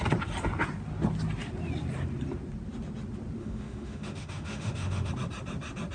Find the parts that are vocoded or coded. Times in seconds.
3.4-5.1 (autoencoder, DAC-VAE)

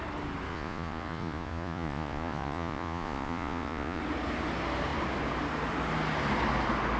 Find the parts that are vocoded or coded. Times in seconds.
0.5-4.0 (vocoder, Vocos)

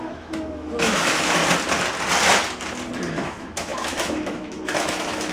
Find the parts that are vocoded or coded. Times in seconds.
0.0-1.4 (autoencoder, DAC-VAE); 3.1-5.3

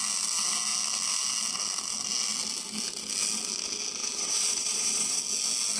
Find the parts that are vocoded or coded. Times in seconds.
4.0-5.2 (vocoder, BigVGAN v2)

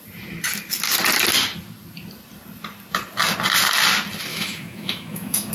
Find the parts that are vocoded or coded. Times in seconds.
4.3-5.5 (autoencoder, DAC-VAE)

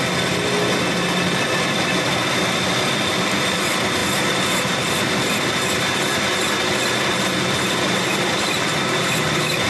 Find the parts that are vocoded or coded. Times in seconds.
none